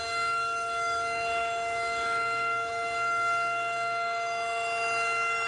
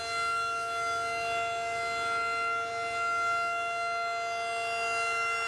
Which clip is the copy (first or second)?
first